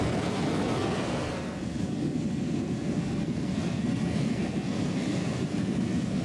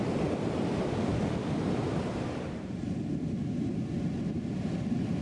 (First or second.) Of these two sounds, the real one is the second